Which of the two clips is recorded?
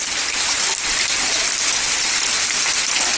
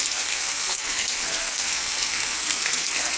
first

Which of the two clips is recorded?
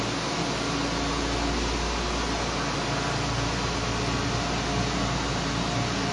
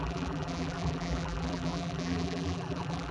first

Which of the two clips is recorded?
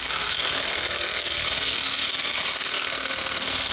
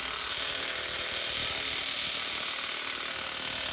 second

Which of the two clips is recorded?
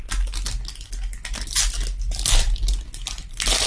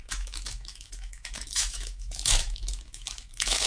first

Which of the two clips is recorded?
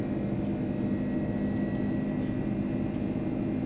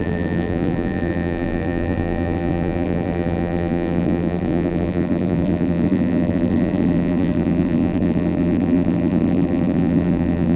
first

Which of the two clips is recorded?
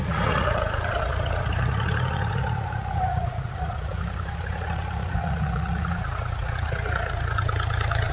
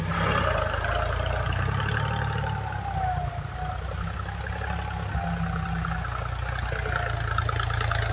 second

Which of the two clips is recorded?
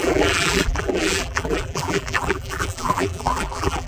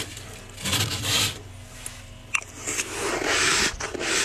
second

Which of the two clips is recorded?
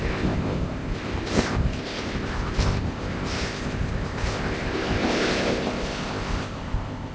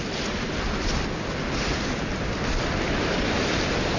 second